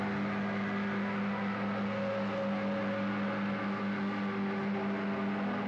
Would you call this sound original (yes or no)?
yes